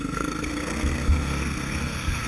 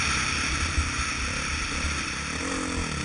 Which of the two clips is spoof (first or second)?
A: first